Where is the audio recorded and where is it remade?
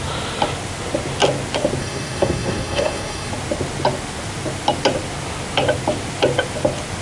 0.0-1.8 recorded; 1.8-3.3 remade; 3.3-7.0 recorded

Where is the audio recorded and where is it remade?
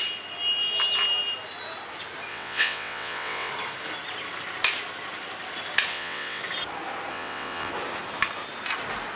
0.0-2.3 recorded; 2.3-3.5 remade; 3.5-5.9 recorded; 5.9-6.4 remade; 6.4-7.1 recorded; 7.1-7.7 remade; 7.7-9.2 recorded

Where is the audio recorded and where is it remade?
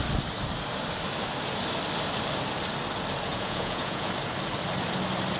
0.0-3.3 recorded; 3.3-4.1 remade; 4.1-5.4 recorded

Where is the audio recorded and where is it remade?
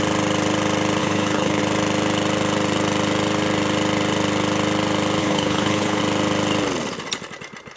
0.0-1.0 recorded; 1.0-1.6 remade; 1.6-5.2 recorded; 5.2-6.0 remade; 6.0-7.8 recorded